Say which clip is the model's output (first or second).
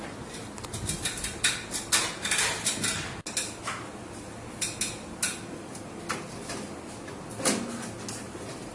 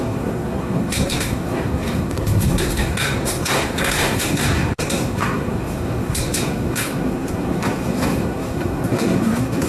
second